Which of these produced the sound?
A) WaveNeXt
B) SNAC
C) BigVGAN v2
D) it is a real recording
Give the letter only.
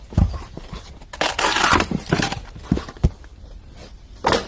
D